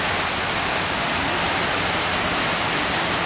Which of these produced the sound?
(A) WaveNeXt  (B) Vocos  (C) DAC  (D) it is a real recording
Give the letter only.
D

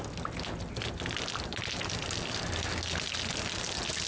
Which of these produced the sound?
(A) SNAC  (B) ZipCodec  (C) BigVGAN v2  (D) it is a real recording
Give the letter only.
D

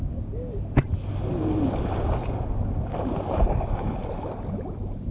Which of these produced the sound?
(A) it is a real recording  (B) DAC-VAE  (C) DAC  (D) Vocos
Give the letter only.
A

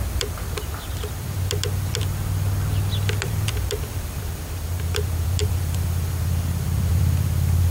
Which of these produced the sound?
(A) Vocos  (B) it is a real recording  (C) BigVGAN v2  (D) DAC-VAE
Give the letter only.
C